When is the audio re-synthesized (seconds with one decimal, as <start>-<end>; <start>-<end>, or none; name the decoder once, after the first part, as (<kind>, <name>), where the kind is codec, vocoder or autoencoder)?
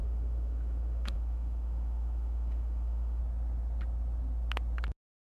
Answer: 0.0-3.2 (autoencoder, DAC-VAE)